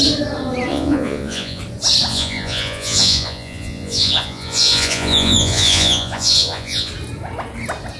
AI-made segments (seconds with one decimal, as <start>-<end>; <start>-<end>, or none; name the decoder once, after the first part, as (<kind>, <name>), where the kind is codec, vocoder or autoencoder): 0.7-1.6 (vocoder, Vocos); 2.1-6.9